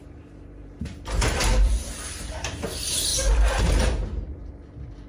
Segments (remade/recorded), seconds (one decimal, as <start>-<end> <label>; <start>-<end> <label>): 0.0-2.6 remade; 2.6-3.1 recorded; 3.1-4.5 remade; 4.5-5.1 recorded